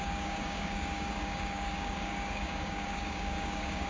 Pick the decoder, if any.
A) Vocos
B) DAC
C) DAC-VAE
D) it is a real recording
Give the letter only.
B